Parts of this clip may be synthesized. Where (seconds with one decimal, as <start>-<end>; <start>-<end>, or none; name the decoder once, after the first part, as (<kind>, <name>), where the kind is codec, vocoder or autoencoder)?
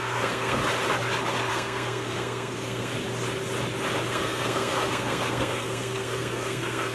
0.0-0.6 (codec, SNAC); 1.5-2.9; 4.1-6.9